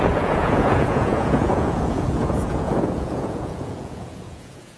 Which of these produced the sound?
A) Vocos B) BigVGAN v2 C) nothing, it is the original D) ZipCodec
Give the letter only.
A